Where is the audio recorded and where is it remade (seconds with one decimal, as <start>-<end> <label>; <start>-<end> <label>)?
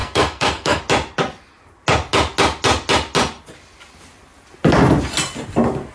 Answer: 0.0-0.8 remade; 0.8-5.9 recorded